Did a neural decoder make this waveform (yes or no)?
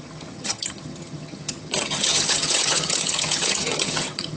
yes